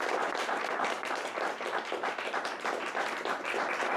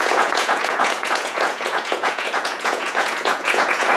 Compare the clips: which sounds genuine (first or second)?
first